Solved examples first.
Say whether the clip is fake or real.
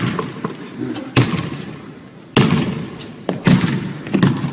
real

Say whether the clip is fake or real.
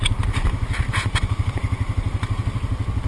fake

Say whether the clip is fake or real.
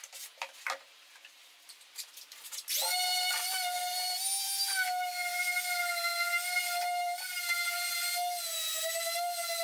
real